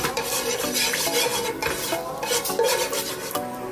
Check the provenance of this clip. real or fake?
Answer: fake